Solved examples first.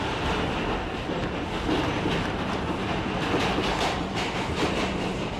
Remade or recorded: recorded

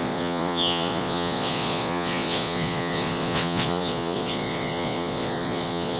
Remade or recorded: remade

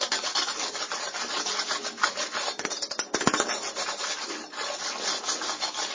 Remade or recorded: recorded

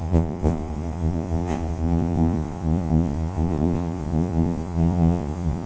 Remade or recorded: remade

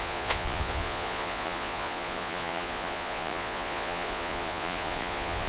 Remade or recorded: remade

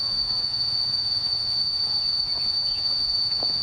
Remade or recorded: remade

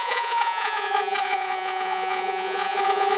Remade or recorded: remade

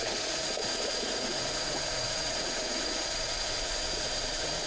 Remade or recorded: remade